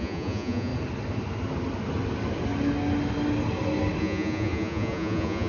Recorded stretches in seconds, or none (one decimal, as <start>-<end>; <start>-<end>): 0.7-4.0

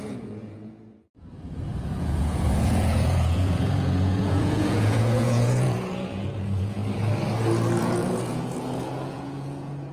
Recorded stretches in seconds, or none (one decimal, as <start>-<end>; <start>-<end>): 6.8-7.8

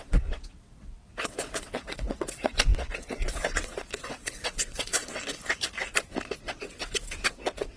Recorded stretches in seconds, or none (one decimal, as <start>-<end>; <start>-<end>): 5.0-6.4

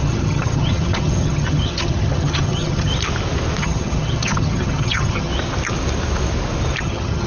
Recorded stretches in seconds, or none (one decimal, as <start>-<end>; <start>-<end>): 2.9-3.6; 5.3-6.8

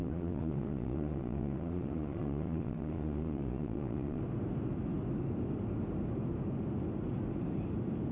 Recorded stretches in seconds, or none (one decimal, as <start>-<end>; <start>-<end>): 4.2-8.1

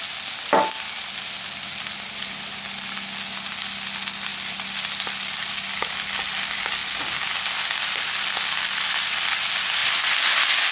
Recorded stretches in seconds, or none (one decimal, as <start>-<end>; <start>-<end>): 0.0-4.3; 5.7-10.7

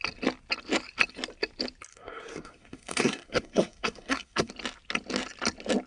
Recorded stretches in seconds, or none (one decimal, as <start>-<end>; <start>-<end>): 0.0-1.9; 4.5-5.9

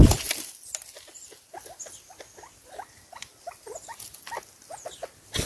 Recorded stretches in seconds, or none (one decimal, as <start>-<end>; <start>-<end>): 0.0-5.5